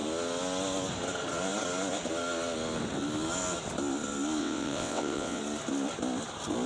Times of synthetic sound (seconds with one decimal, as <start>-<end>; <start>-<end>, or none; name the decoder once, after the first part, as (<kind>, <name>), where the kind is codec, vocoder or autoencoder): 4.4-5.4 (vocoder, WaveNeXt)